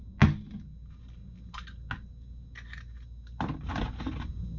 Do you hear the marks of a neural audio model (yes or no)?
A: no